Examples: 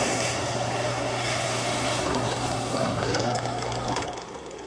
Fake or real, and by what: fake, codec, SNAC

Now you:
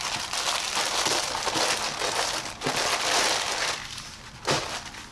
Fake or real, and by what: real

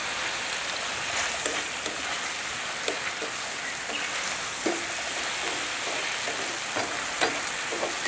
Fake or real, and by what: real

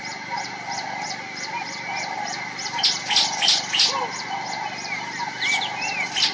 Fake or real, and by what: real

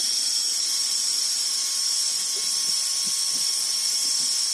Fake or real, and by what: real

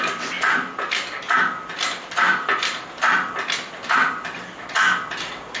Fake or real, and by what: real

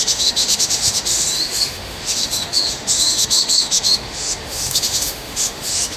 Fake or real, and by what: fake, autoencoder, DAC-VAE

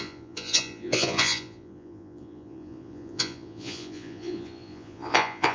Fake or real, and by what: fake, vocoder, Vocos